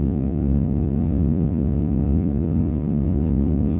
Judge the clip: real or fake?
fake